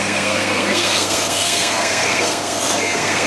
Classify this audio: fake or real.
fake